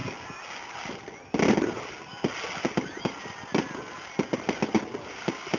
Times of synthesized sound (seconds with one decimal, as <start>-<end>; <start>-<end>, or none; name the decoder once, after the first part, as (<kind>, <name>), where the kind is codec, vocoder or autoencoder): none